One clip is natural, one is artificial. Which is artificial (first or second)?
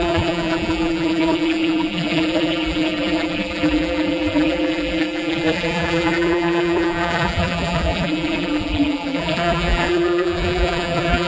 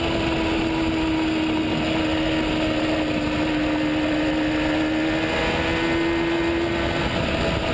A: first